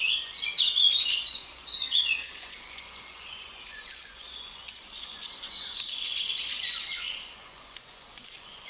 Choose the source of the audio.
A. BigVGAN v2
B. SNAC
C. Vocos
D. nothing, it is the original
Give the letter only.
C